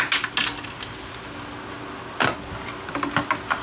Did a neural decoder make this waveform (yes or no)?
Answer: no